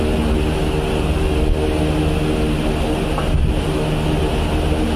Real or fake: real